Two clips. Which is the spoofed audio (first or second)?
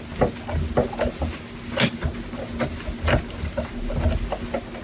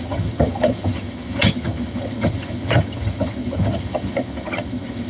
second